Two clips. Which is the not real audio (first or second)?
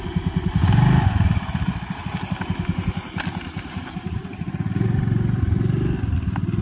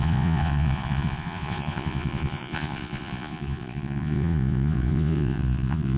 second